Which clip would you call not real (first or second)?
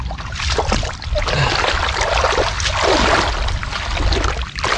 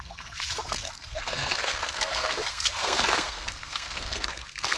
second